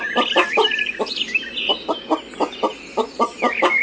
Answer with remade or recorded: recorded